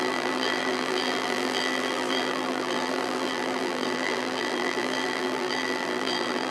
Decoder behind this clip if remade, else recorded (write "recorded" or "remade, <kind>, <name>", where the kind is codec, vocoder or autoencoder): remade, vocoder, BigVGAN v2